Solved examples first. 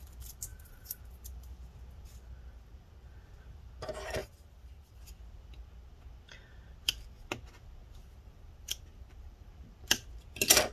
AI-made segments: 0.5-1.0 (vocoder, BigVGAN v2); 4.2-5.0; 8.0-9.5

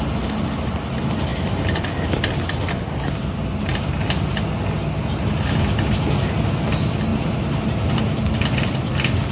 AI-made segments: 7.1-8.9 (vocoder, BigVGAN v2)

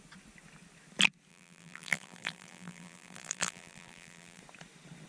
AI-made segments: 1.3-4.4 (vocoder, BigVGAN v2)

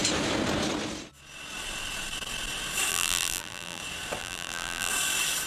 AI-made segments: 2.9-3.8 (vocoder, BigVGAN v2); 4.2-4.9

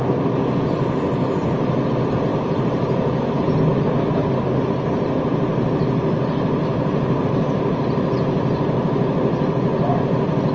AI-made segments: 2.3-3.2 (vocoder, BigVGAN v2); 6.6-7.2